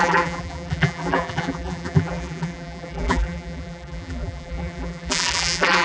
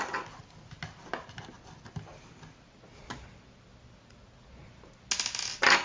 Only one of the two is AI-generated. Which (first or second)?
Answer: first